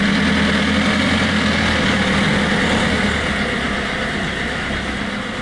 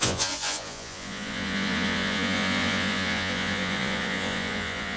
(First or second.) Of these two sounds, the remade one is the second